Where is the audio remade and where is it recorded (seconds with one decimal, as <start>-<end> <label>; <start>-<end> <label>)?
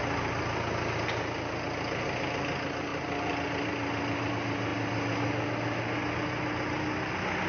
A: 0.0-7.5 recorded